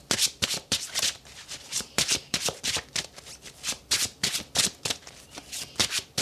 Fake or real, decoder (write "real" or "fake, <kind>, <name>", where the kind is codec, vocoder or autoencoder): fake, vocoder, BigVGAN v2